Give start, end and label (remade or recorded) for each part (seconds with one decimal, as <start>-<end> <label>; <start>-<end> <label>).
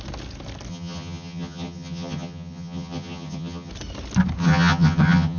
0.0-0.7 recorded; 0.7-3.7 remade; 3.7-4.4 recorded; 4.4-5.4 remade